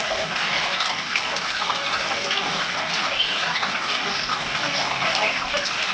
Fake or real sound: fake